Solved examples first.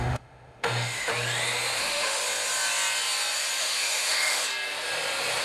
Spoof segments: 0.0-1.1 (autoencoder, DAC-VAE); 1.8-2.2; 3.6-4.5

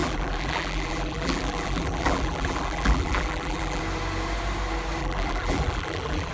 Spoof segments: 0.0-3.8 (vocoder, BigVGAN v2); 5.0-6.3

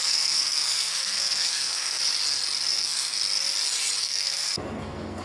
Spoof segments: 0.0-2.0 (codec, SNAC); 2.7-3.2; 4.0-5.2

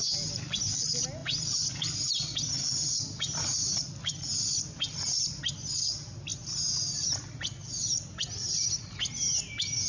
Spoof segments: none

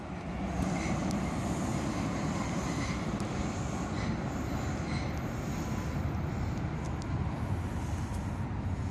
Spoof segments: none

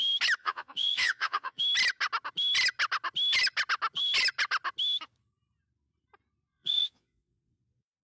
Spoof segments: 0.4-1.6 (vocoder, Vocos); 6.5-8.0

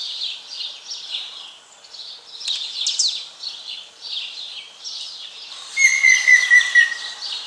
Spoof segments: 5.9-6.5 (vocoder, Vocos)